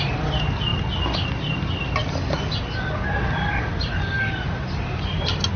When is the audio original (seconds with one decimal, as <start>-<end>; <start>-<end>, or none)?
0.0-5.6